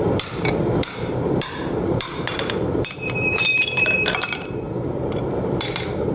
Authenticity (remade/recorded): remade